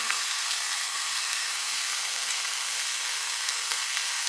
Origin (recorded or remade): remade